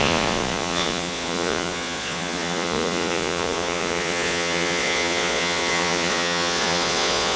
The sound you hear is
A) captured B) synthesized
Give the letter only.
B